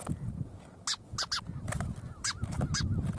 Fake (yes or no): no